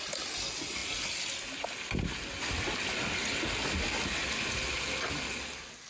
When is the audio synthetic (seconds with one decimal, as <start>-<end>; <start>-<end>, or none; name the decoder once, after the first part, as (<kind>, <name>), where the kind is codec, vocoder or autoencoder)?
none